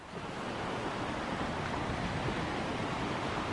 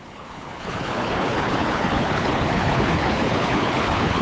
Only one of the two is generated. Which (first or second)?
second